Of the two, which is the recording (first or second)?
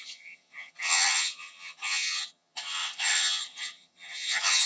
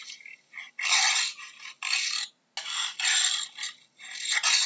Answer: second